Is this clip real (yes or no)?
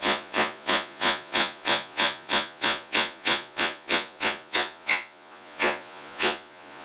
no